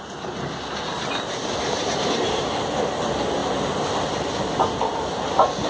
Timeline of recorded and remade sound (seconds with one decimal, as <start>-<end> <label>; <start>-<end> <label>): 0.0-5.7 recorded